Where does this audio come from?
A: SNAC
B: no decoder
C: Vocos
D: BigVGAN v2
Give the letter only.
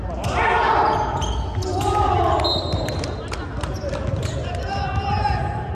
B